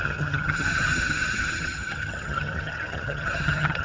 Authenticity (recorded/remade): remade